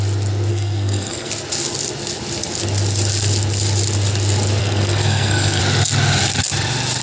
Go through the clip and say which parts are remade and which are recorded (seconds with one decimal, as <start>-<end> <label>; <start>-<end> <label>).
0.0-0.5 recorded; 0.5-1.3 remade; 1.3-4.6 recorded; 4.6-5.6 remade; 5.6-7.0 recorded